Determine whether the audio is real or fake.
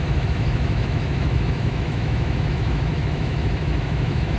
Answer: fake